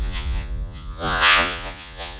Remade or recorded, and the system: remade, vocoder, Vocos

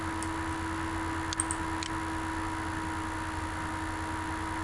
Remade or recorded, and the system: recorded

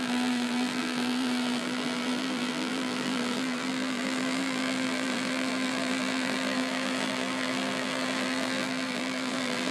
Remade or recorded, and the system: remade, vocoder, BigVGAN v2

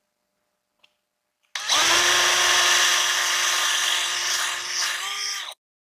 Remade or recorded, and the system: recorded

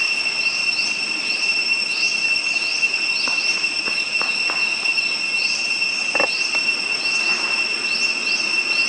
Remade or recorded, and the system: recorded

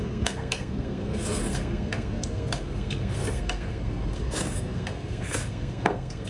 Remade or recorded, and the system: remade, codec, SNAC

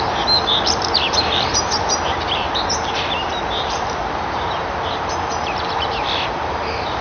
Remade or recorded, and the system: remade, vocoder, BigVGAN v2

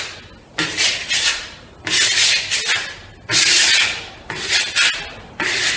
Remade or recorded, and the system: recorded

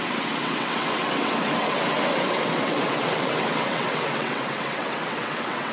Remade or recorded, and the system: remade, vocoder, WaveNeXt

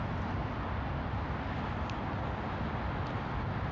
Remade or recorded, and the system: recorded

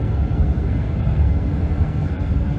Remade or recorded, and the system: remade, codec, SNAC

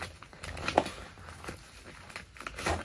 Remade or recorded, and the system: recorded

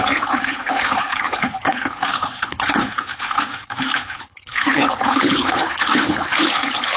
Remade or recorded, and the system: remade, codec, HILCodec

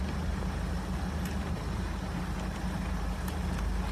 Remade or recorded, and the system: recorded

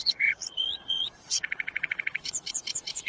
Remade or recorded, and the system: remade, vocoder, Vocos